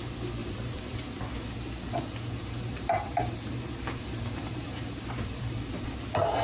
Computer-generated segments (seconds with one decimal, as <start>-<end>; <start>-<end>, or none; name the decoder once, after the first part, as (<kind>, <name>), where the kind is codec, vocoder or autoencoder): 0.4-1.0 (vocoder, BigVGAN v2); 2.4-5.7